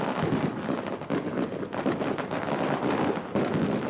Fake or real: real